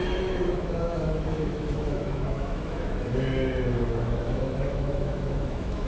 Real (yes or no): no